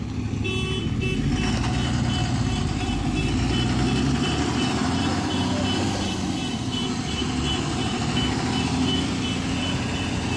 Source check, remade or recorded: recorded